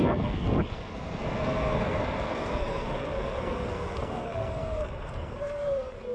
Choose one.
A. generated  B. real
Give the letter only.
A